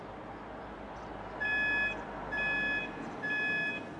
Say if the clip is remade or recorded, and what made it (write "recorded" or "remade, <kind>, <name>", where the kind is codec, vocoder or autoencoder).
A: recorded